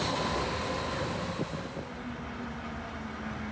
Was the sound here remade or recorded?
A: recorded